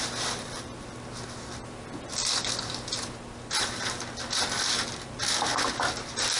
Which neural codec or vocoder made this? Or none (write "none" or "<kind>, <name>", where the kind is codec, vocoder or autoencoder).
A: none